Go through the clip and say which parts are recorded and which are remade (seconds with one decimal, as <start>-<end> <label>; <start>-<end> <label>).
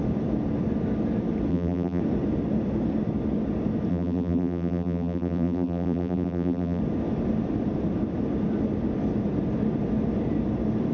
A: 0.0-1.5 recorded; 1.5-2.0 remade; 2.0-3.9 recorded; 3.9-6.8 remade; 6.8-10.9 recorded